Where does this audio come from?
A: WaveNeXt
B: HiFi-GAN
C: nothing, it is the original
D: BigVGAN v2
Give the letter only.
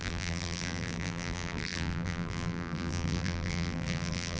D